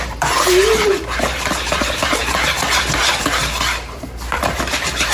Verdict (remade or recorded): remade